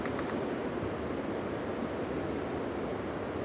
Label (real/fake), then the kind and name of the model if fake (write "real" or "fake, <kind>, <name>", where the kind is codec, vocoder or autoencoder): real